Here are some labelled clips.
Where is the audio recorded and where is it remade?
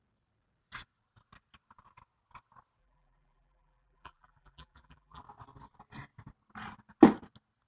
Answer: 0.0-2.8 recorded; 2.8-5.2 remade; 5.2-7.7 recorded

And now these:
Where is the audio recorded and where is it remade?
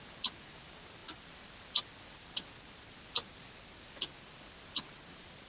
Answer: 0.0-5.5 recorded